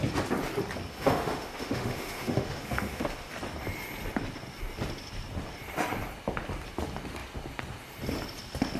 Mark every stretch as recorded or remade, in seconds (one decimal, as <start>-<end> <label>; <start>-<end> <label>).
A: 0.0-0.9 recorded; 0.9-3.3 remade; 3.3-8.8 recorded